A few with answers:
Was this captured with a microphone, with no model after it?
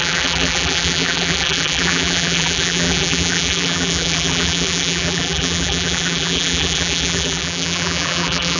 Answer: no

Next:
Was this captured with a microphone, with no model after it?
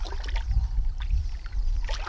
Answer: yes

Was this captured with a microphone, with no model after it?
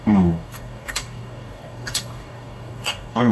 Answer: no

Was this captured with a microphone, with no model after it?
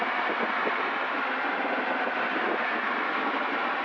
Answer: yes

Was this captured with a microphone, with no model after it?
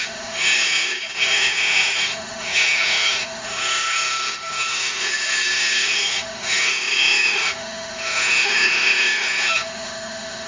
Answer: no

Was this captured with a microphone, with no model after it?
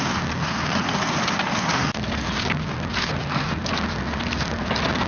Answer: yes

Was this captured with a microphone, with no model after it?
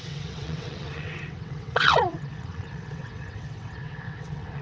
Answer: no